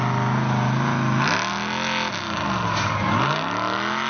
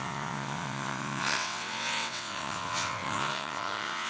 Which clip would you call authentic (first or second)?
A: first